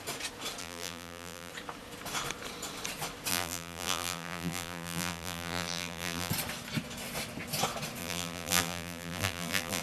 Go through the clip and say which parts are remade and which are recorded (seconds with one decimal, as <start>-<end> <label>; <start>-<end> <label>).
0.0-0.6 recorded; 0.6-1.5 remade; 1.5-3.3 recorded; 3.3-6.3 remade; 6.3-8.0 recorded; 8.0-9.8 remade